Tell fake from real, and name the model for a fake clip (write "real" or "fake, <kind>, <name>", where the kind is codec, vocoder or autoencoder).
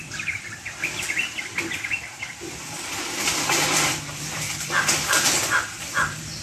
fake, vocoder, BigVGAN v2